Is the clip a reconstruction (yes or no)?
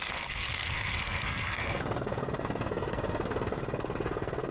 yes